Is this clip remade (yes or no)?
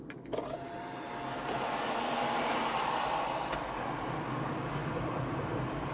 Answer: no